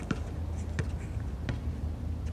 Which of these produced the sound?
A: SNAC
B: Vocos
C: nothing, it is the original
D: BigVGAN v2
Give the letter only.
C